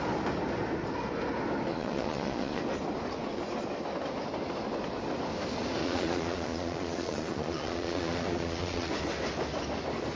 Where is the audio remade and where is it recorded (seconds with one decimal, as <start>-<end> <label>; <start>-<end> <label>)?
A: 0.0-1.7 recorded; 1.7-2.6 remade; 2.6-5.8 recorded; 5.8-8.9 remade; 8.9-10.2 recorded